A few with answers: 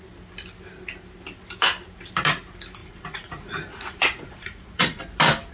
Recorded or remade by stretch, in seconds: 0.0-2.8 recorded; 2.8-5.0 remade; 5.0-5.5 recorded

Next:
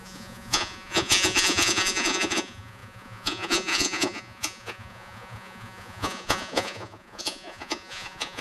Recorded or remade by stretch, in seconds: 0.0-8.4 remade

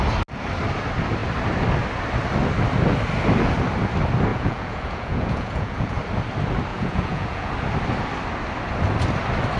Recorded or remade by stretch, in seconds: 0.0-4.3 recorded; 4.3-6.0 remade; 6.0-6.7 recorded; 6.7-7.5 remade; 7.5-9.6 recorded

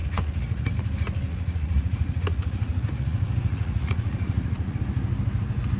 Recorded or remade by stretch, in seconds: 0.0-0.7 remade; 0.7-1.3 recorded; 1.3-4.8 remade; 4.8-5.8 recorded

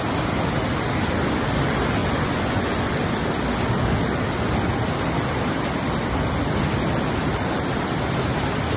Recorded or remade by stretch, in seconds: 0.0-2.0 recorded; 2.0-2.9 remade; 2.9-8.8 recorded

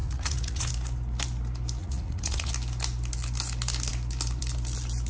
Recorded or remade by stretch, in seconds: 0.0-0.7 remade; 0.7-1.8 recorded; 1.8-2.5 remade; 2.5-5.1 recorded

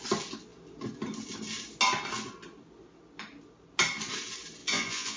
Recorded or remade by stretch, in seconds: 0.0-4.6 recorded; 4.6-5.2 remade

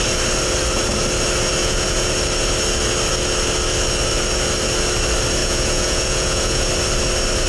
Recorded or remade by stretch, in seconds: 0.0-1.6 recorded; 1.6-2.1 remade; 2.1-5.4 recorded; 5.4-6.7 remade; 6.7-7.5 recorded